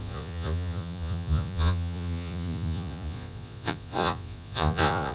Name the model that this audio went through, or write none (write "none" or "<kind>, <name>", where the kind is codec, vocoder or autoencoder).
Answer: vocoder, Vocos